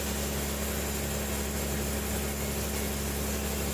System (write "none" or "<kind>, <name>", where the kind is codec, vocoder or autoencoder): none